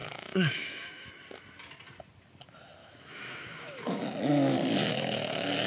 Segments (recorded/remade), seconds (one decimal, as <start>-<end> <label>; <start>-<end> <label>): 0.0-1.1 remade; 1.1-2.8 recorded; 2.8-4.0 remade; 4.0-4.8 recorded; 4.8-5.7 remade